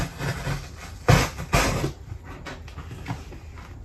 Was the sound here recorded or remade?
recorded